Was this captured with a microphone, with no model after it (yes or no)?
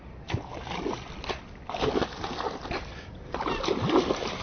yes